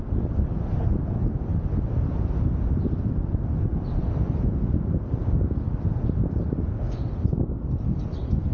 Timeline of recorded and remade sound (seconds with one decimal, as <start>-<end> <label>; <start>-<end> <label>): 0.0-8.5 recorded